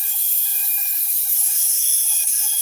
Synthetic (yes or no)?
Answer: yes